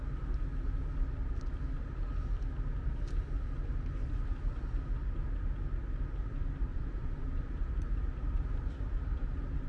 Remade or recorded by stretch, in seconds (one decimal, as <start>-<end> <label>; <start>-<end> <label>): 0.0-6.7 recorded; 6.7-9.7 remade